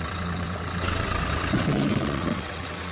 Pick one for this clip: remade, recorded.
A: remade